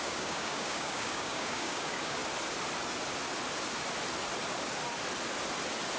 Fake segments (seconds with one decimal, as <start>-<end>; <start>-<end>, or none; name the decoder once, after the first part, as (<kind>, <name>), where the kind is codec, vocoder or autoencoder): 0.0-2.2 (codec, DAC)